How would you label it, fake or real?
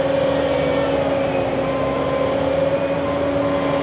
real